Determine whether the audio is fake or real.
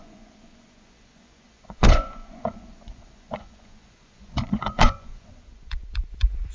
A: fake